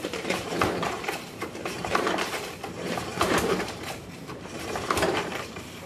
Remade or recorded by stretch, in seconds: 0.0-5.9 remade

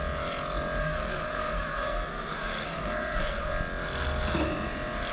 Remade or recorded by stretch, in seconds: 0.0-0.8 recorded; 0.8-3.5 remade; 3.5-5.1 recorded

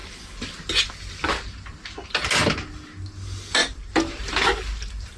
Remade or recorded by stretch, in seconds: 0.0-3.6 recorded; 3.6-4.2 remade; 4.2-5.2 recorded

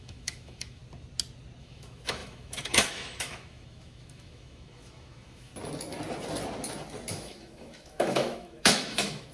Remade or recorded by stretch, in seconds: 0.0-0.8 remade; 0.8-1.6 recorded; 1.6-5.5 remade; 5.5-7.1 recorded; 7.1-9.3 remade

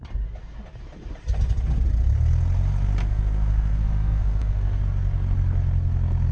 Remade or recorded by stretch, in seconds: 0.0-3.0 recorded; 3.0-4.8 remade; 4.8-6.3 recorded

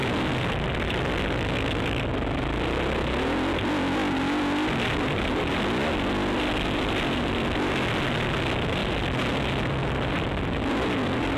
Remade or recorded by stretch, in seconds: 0.0-11.4 recorded